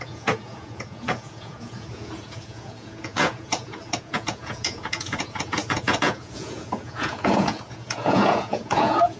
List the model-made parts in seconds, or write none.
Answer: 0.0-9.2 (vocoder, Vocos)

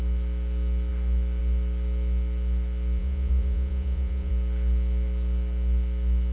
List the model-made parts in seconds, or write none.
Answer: 3.0-4.3 (vocoder, Vocos)

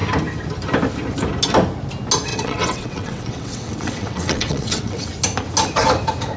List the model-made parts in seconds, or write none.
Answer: 2.3-5.1 (vocoder, WaveNeXt)

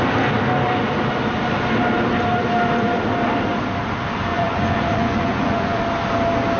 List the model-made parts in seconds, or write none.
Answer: 4.3-5.8 (vocoder, Vocos)

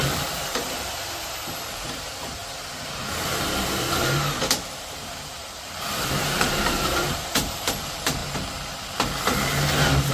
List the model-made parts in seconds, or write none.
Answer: 0.0-8.2 (vocoder, BigVGAN v2)

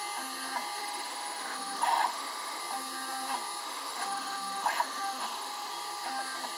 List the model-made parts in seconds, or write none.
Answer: 0.8-2.6 (autoencoder, DAC-VAE); 3.6-5.7